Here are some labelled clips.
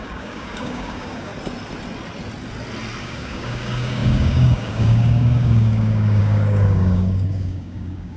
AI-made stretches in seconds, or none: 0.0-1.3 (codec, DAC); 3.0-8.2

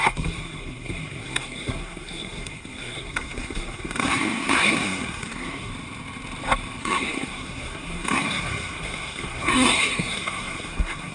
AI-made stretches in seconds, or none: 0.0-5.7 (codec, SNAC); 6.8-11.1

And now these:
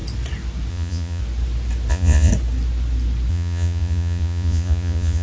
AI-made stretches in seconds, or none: 0.7-1.2 (vocoder, Vocos); 1.9-2.3; 3.3-5.2